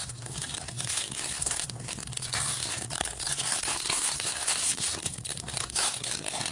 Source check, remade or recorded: remade